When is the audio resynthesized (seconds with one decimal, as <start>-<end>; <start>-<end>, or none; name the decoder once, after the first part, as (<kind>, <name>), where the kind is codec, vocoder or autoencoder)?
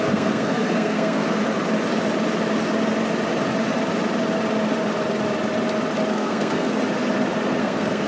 0.0-1.4 (codec, SNAC); 6.1-6.8; 7.6-8.1